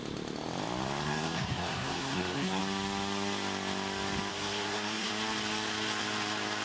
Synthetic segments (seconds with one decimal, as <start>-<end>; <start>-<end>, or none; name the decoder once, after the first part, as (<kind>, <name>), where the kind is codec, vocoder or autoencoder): 1.0-2.6 (codec, SNAC); 4.3-5.1